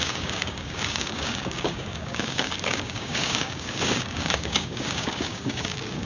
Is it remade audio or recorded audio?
remade